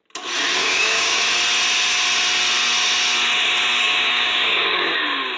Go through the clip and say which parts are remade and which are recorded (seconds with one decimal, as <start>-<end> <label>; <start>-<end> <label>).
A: 0.0-0.6 recorded; 0.6-1.2 remade; 1.2-3.8 recorded; 3.8-4.9 remade; 4.9-5.4 recorded